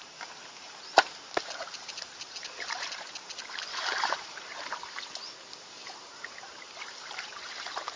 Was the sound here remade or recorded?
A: remade